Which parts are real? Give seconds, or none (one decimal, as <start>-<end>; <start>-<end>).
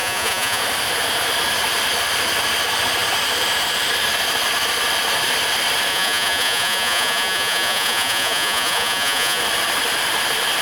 0.6-5.9; 9.4-10.6